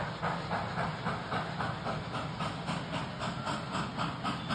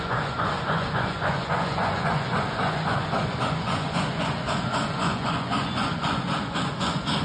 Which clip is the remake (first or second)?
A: second